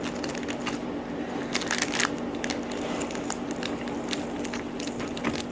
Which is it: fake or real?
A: real